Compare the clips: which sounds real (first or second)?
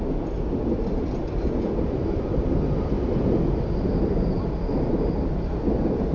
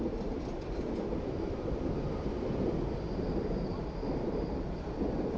first